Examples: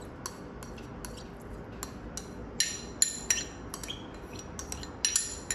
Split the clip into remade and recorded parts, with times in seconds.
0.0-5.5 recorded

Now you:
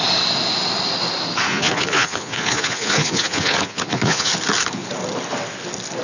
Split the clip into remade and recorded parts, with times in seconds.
0.0-1.5 recorded; 1.5-4.3 remade; 4.3-6.0 recorded

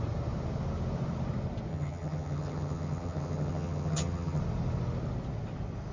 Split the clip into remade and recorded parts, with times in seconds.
0.0-1.7 recorded; 1.7-4.4 remade; 4.4-5.9 recorded